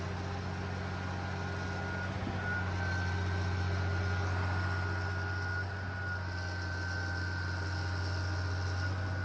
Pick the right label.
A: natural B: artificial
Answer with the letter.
A